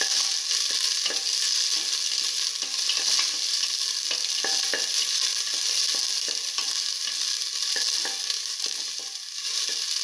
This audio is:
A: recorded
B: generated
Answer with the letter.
A